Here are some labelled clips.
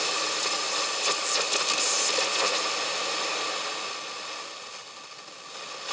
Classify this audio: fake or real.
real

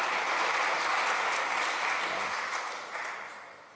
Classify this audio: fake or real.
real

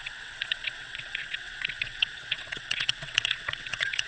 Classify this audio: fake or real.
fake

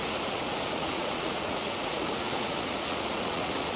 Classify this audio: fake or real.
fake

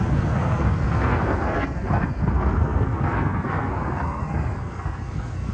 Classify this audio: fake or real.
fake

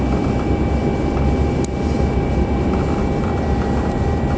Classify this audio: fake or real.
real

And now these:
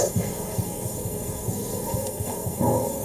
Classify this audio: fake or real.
fake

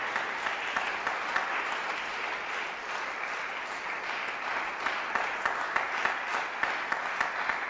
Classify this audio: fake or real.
real